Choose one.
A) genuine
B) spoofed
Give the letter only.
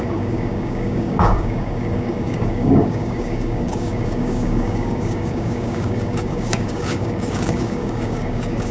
B